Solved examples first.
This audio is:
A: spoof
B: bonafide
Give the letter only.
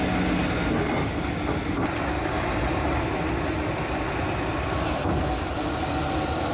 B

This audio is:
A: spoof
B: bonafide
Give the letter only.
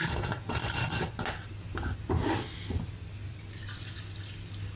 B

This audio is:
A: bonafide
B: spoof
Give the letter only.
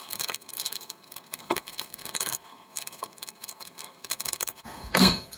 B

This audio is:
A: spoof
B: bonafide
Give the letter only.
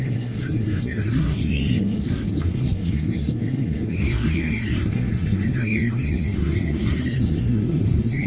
A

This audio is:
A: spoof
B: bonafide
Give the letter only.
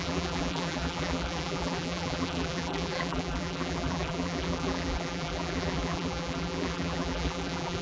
A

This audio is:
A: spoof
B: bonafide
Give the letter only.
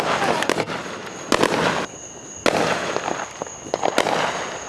B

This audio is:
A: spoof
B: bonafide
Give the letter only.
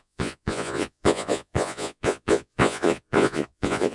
A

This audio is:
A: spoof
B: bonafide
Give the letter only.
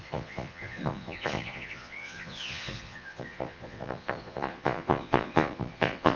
A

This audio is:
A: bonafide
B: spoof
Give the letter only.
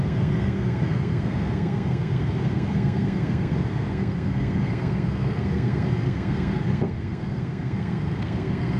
B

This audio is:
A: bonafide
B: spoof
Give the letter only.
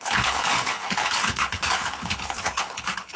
B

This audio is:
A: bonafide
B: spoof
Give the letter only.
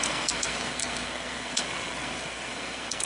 B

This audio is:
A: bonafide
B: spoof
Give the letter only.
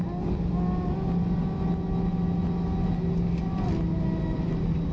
A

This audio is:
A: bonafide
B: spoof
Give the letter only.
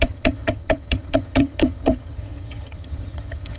B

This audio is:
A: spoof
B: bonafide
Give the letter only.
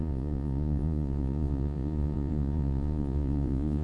A